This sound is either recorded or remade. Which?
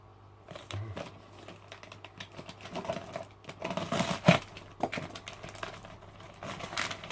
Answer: recorded